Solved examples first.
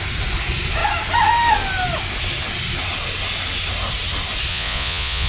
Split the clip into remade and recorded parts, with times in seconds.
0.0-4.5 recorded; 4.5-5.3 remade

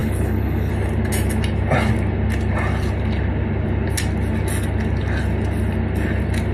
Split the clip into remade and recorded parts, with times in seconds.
0.0-0.7 remade; 0.7-6.5 recorded

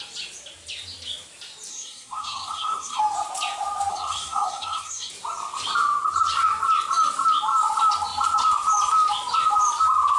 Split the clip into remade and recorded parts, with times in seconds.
0.0-1.7 recorded; 1.7-3.0 remade; 3.0-3.9 recorded; 3.9-5.1 remade; 5.1-10.2 recorded